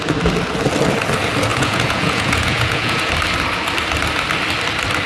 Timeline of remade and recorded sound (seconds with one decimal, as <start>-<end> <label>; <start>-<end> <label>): 0.0-1.5 recorded; 1.5-3.1 remade; 3.1-5.1 recorded